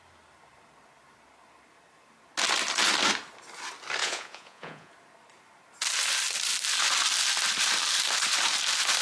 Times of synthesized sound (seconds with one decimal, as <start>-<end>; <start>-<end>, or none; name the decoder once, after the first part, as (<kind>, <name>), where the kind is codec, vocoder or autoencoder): 4.0-4.9 (vocoder, Vocos)